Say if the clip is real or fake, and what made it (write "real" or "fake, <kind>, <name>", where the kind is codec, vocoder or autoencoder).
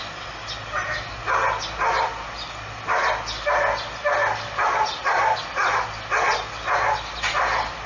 real